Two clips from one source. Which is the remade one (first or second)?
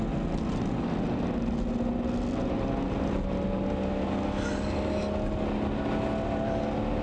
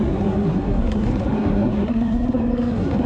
second